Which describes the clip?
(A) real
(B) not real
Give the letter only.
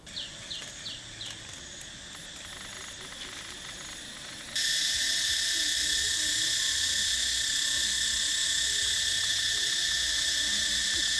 A